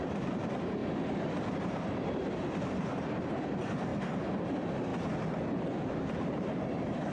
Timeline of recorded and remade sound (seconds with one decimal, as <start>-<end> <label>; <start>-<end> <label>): 0.0-0.8 remade; 0.8-2.7 recorded; 2.7-3.9 remade; 3.9-4.4 recorded; 4.4-4.9 remade; 4.9-5.6 recorded; 5.6-7.1 remade